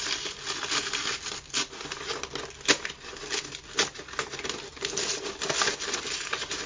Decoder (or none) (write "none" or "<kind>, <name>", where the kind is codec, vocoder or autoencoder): none